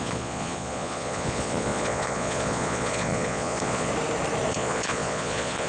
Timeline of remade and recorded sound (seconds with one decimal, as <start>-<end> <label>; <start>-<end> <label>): 0.0-3.9 remade; 3.9-4.5 recorded; 4.5-5.7 remade